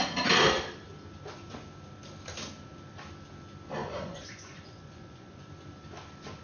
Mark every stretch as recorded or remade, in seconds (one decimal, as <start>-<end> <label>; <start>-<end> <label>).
0.0-3.8 recorded; 3.8-5.5 remade; 5.5-6.4 recorded

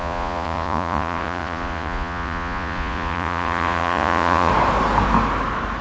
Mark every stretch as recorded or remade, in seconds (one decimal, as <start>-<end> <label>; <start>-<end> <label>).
0.0-4.5 remade; 4.5-5.8 recorded

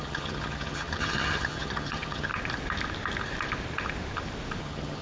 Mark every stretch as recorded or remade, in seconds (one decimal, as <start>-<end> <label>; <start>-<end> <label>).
0.0-2.3 remade; 2.3-4.6 recorded; 4.6-5.0 remade

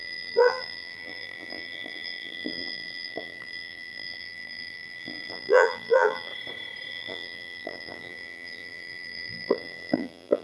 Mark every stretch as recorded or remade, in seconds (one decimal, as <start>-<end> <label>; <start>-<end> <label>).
0.0-6.3 remade; 6.3-6.9 recorded; 6.9-10.4 remade